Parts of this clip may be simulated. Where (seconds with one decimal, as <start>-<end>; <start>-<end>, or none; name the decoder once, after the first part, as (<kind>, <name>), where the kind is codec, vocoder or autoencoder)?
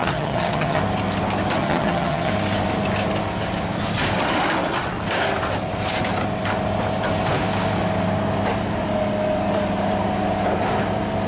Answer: 0.0-0.8 (vocoder, HiFi-GAN); 1.6-2.3